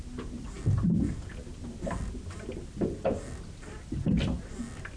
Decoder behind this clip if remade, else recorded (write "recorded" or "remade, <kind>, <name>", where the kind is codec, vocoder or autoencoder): recorded